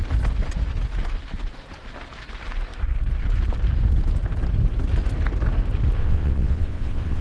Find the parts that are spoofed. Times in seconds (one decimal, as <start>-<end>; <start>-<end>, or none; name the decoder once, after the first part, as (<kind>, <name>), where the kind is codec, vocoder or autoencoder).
6.0-7.2 (vocoder, WaveNeXt)